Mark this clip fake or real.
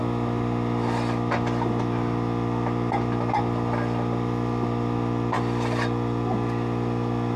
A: real